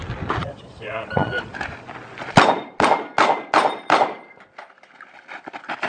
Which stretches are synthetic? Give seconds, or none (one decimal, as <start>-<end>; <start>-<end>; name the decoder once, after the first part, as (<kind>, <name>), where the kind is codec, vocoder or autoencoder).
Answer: 0.4-1.4 (vocoder, Vocos)